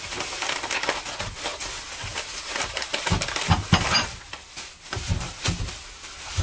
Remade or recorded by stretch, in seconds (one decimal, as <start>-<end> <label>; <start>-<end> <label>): 0.0-6.4 recorded